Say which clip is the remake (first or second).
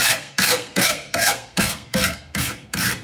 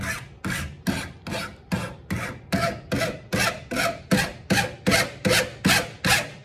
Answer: first